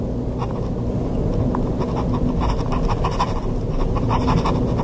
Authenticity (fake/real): real